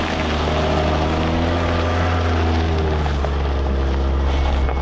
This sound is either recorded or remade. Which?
recorded